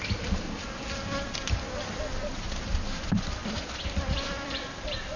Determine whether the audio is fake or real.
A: real